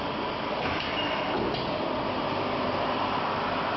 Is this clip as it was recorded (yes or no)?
no